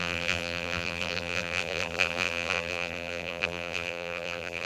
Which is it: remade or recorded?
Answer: remade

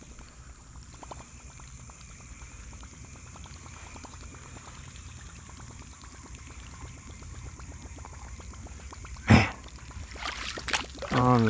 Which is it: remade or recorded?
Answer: remade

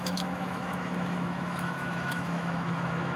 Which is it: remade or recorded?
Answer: remade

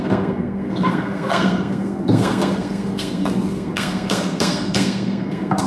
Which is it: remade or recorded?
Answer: remade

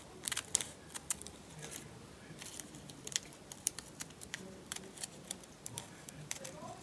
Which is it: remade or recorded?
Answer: remade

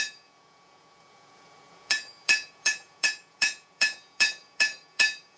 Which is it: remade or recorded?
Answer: remade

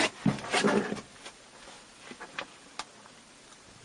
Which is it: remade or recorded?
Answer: recorded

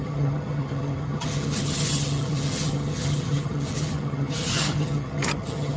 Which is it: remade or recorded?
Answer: remade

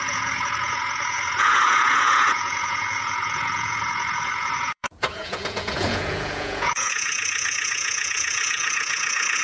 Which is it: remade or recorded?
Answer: remade